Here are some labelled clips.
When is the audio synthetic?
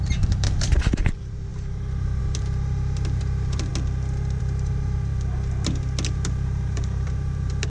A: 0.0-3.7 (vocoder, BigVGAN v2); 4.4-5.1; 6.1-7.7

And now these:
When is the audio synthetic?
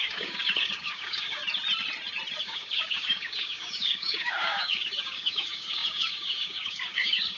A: 0.0-1.4 (codec, DAC); 2.4-7.4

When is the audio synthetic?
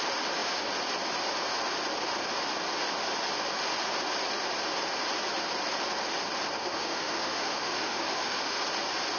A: 6.6-8.6 (autoencoder, DAC-VAE)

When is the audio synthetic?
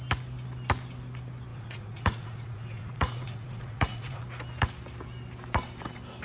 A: 1.5-4.2 (vocoder, Vocos)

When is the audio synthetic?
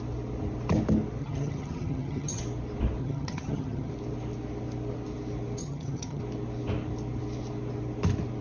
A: 1.2-2.4 (vocoder, HiFi-GAN); 3.0-3.9; 5.6-6.2